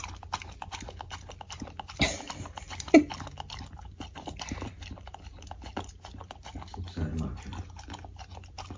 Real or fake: real